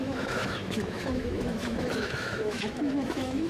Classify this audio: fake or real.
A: fake